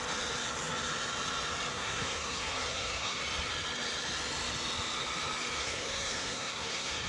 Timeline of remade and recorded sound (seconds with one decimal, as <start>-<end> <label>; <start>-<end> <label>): 0.0-1.7 recorded; 1.7-3.2 remade; 3.2-5.6 recorded; 5.6-7.1 remade